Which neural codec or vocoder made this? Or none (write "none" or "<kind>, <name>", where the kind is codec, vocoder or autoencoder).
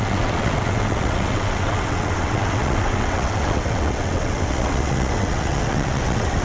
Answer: vocoder, WaveNeXt